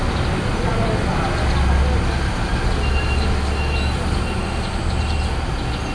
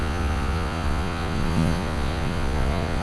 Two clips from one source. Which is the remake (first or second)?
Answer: second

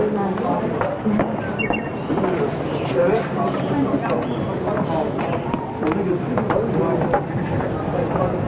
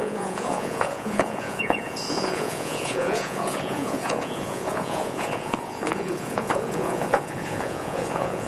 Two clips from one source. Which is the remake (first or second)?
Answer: second